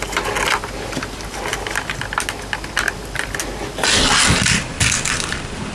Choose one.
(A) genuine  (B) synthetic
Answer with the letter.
A